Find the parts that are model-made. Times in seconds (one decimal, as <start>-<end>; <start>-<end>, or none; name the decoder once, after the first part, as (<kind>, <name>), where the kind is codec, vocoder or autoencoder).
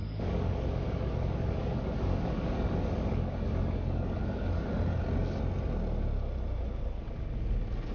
0.0-4.7 (codec, DAC)